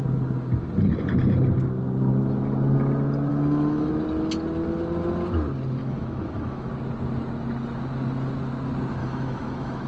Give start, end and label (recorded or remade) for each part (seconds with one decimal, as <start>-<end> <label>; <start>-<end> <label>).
0.0-3.3 recorded; 3.3-3.9 remade; 3.9-5.8 recorded; 5.8-6.7 remade; 6.7-9.0 recorded; 9.0-9.9 remade